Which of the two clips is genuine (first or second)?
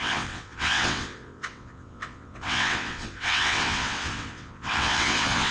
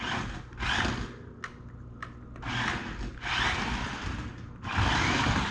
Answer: second